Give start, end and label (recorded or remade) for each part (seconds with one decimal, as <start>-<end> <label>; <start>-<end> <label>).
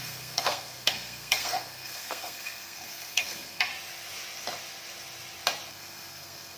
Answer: 0.0-3.7 remade; 3.7-5.7 recorded; 5.7-6.6 remade